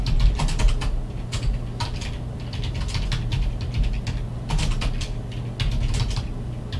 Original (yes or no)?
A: yes